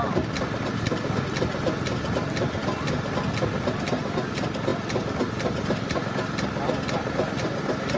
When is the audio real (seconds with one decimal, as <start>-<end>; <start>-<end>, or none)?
0.0-2.6; 3.1-4.7; 6.0-8.0